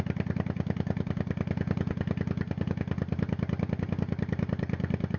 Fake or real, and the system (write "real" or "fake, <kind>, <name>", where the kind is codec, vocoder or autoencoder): real